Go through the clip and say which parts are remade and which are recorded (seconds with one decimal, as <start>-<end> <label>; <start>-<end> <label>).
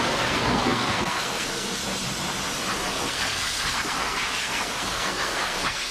0.0-1.8 remade; 1.8-2.9 recorded; 2.9-5.9 remade